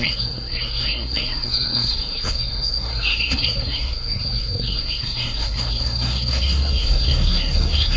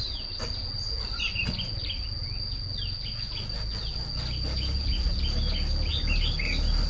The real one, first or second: second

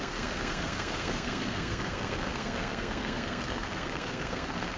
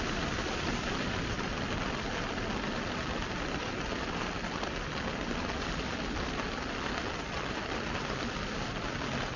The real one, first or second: second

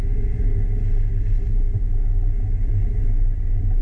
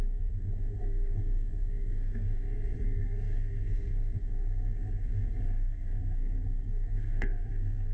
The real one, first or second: first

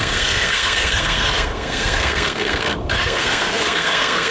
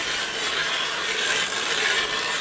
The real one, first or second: second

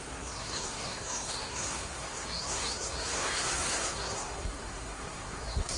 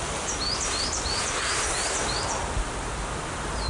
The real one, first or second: second